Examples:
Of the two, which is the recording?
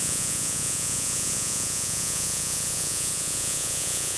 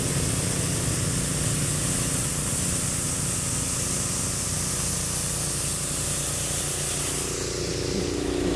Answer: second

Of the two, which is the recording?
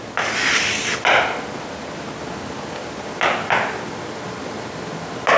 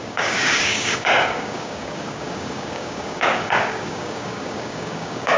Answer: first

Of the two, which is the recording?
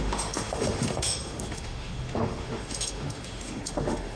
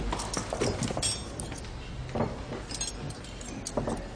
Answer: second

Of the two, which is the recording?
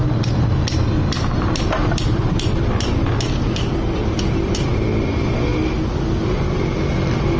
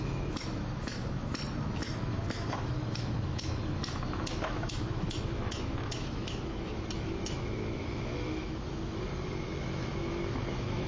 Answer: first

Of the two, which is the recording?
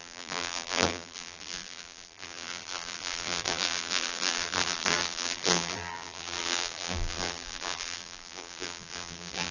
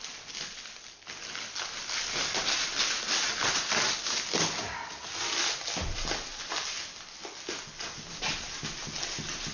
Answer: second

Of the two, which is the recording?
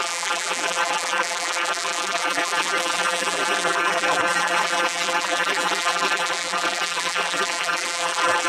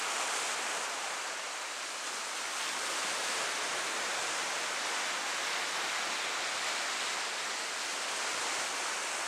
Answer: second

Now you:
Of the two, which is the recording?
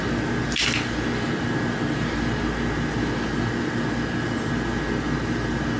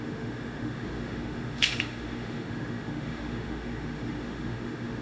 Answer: first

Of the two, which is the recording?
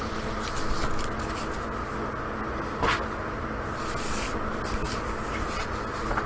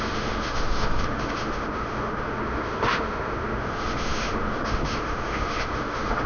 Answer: first